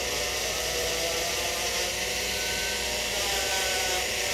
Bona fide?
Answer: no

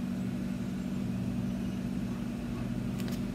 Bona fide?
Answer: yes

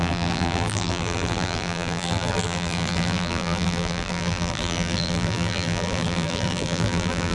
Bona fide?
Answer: no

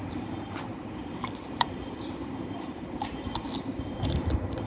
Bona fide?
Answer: no